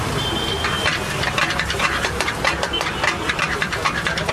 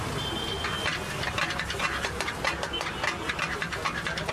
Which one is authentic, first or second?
second